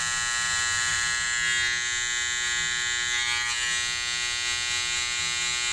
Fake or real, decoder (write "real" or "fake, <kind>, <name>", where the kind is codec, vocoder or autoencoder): real